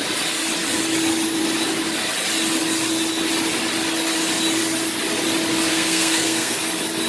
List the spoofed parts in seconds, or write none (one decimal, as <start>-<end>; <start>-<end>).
5.7-6.6